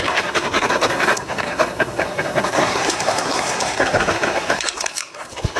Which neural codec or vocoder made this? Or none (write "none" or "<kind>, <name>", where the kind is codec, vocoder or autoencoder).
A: codec, SNAC